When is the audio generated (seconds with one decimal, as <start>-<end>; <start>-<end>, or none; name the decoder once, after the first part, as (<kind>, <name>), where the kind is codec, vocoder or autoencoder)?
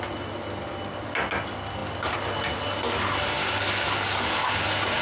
none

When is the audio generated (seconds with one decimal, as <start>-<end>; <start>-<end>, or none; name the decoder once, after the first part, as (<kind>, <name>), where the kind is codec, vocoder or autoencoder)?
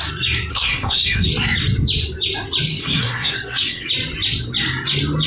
0.5-1.3 (codec, SNAC); 2.8-3.9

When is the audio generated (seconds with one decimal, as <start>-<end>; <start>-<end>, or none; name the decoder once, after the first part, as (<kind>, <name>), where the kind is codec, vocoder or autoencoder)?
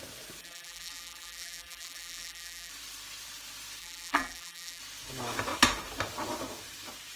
0.4-2.7 (vocoder, BigVGAN v2); 3.8-4.8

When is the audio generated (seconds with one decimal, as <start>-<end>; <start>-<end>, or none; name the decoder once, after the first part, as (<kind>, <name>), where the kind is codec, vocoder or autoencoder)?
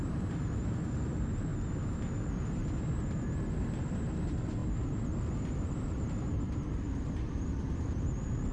0.0-1.5 (vocoder, BigVGAN v2); 2.0-2.6; 3.7-8.5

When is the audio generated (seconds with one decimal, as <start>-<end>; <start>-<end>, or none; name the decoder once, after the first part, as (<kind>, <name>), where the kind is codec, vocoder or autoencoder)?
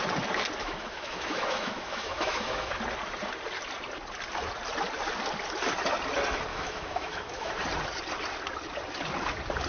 0.6-2.8 (autoencoder, DAC-VAE); 6.5-7.5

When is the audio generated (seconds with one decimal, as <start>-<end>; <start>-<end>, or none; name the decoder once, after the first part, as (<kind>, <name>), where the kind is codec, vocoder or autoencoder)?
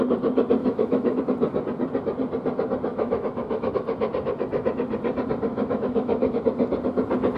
0.6-1.2 (autoencoder, DAC-VAE); 2.9-3.7; 5.5-6.4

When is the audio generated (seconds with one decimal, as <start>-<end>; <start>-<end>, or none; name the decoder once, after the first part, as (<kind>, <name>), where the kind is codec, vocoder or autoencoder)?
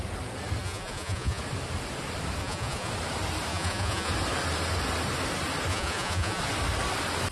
0.6-1.4 (vocoder, Vocos); 2.4-2.9; 3.5-4.1; 5.7-6.4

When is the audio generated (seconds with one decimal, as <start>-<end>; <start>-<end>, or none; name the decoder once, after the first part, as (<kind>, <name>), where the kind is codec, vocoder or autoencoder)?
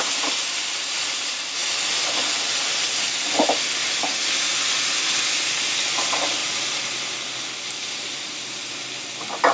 6.4-7.1 (vocoder, BigVGAN v2); 7.8-8.4